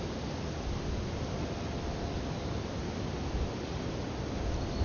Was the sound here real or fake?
real